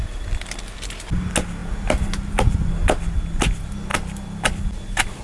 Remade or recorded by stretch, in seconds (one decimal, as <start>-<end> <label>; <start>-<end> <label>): 0.0-5.2 recorded